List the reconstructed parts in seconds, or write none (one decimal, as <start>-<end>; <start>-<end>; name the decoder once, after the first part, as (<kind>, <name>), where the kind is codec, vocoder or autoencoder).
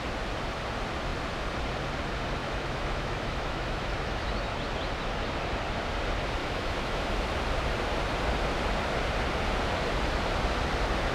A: 2.4-4.3 (autoencoder, DAC-VAE); 6.4-7.0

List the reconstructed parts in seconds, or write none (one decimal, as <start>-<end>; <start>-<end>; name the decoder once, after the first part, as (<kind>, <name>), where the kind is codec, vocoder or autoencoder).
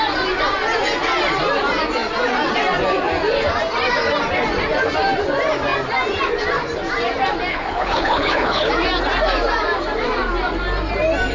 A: 7.5-8.7 (codec, HILCodec)